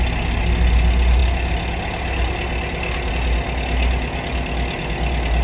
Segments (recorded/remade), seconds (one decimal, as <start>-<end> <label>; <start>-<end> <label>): 0.0-5.4 recorded